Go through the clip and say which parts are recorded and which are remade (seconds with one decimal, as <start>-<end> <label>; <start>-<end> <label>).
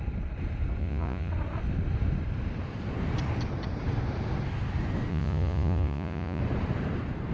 0.0-0.8 recorded; 0.8-1.3 remade; 1.3-5.1 recorded; 5.1-6.4 remade; 6.4-7.3 recorded